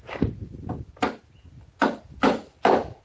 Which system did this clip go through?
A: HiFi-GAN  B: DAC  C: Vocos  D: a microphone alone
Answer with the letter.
D